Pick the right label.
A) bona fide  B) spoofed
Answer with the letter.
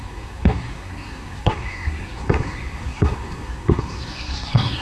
B